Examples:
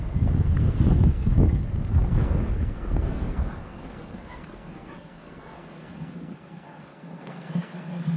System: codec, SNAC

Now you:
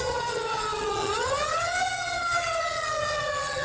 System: vocoder, HiFi-GAN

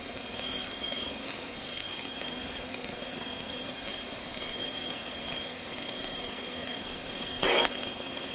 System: codec, SNAC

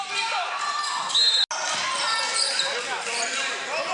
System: none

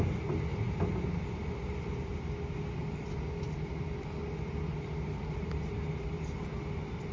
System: none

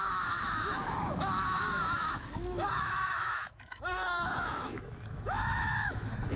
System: autoencoder, DAC-VAE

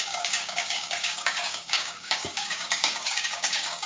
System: codec, DAC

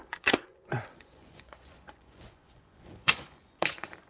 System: vocoder, Vocos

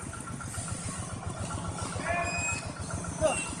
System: none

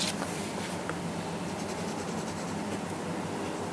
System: none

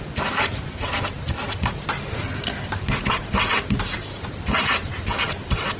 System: vocoder, BigVGAN v2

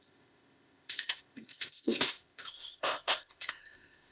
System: codec, ZipCodec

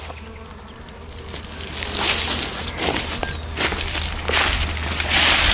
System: none